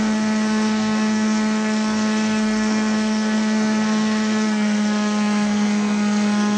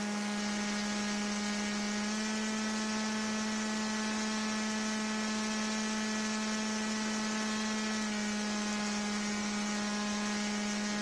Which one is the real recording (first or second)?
second